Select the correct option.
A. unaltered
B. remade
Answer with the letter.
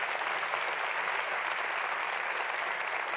A